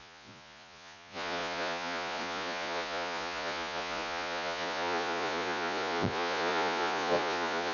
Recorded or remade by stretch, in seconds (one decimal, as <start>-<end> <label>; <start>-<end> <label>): 0.0-7.7 remade